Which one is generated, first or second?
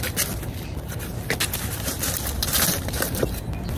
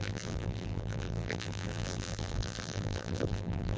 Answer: second